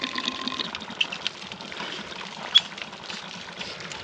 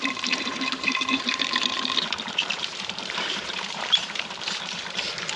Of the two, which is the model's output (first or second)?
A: second